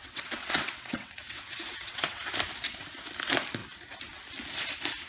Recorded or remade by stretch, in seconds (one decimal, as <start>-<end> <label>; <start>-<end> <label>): 0.0-2.2 remade; 2.2-5.1 recorded